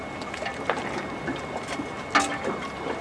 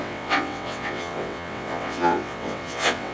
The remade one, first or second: second